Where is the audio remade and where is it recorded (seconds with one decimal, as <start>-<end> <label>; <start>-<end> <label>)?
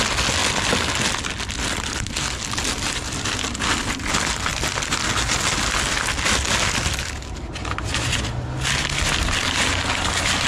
0.0-10.5 recorded